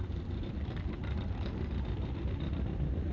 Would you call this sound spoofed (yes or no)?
no